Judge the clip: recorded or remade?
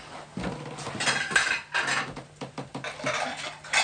recorded